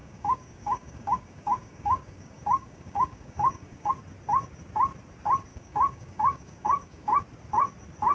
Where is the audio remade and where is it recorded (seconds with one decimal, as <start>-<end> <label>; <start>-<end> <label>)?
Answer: 0.0-3.9 remade; 3.9-5.5 recorded; 5.5-7.2 remade; 7.2-8.1 recorded

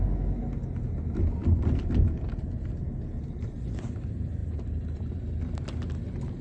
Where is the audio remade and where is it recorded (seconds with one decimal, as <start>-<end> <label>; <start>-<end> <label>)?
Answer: 0.0-4.4 recorded; 4.4-5.1 remade; 5.1-6.4 recorded

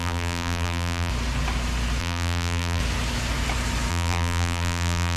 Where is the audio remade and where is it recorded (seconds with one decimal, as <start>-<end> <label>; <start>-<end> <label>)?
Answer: 0.0-1.1 remade; 1.1-2.0 recorded; 2.0-2.8 remade; 2.8-3.9 recorded; 3.9-5.2 remade

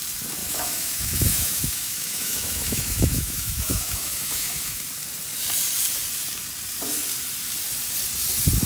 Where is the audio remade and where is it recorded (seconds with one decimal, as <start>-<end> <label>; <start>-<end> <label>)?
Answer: 0.0-0.4 recorded; 0.4-4.8 remade; 4.8-8.7 recorded